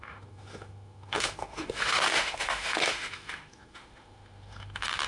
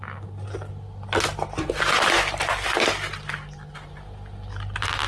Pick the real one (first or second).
second